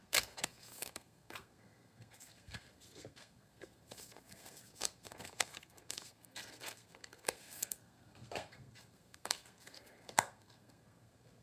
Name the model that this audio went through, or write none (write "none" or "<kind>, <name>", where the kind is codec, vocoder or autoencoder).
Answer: codec, SNAC